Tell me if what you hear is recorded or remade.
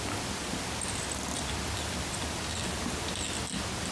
recorded